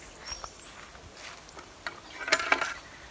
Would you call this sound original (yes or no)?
yes